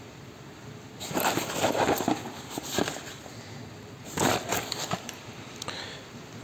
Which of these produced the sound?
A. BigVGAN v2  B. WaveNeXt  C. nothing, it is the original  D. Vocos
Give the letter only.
C